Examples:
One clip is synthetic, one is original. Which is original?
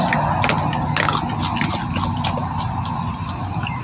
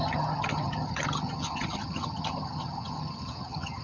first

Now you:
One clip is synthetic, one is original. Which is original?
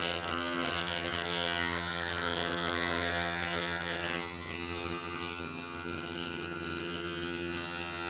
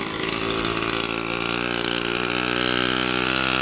second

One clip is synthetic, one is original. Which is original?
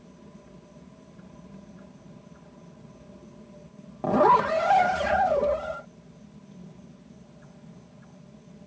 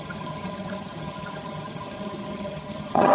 first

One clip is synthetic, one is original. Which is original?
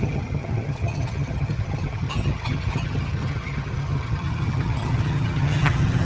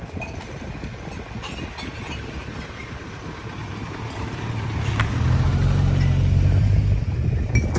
second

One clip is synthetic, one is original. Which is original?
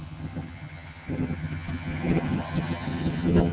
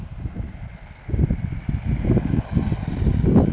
second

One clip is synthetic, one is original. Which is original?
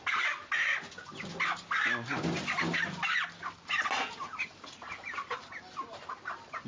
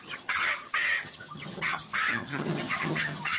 first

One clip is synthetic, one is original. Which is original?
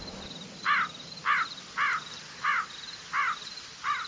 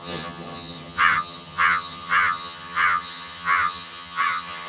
first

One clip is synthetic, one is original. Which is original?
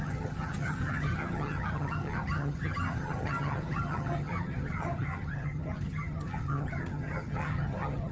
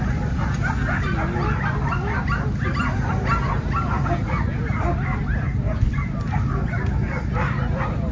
second